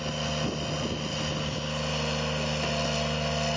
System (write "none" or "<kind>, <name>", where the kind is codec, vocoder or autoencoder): none